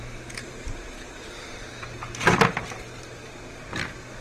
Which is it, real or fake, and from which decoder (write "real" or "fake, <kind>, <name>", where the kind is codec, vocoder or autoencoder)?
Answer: fake, vocoder, BigVGAN v2